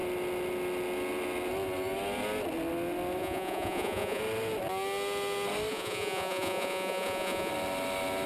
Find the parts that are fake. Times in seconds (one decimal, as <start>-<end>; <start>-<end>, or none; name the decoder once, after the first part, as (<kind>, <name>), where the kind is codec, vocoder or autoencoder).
3.2-4.2 (vocoder, Vocos); 5.7-7.5